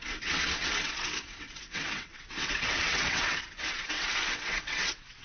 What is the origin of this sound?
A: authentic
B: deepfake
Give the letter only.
B